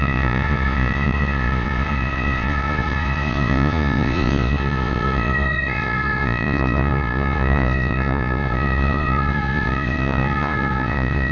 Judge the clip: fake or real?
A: fake